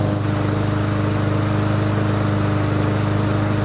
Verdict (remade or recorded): recorded